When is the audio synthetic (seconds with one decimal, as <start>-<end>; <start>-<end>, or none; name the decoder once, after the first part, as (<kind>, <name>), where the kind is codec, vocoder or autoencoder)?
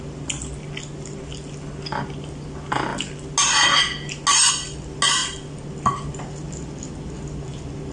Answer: none